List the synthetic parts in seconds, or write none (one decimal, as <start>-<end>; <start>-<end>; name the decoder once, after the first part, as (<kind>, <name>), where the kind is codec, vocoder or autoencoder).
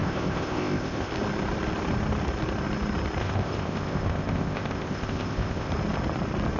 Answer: 0.0-1.1 (codec, ZipCodec); 3.2-5.7